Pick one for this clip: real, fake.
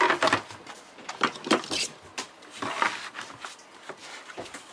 fake